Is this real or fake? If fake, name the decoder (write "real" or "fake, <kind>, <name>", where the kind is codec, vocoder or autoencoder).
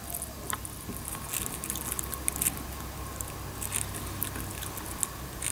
real